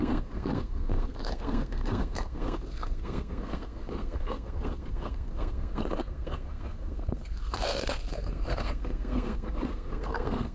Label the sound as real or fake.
fake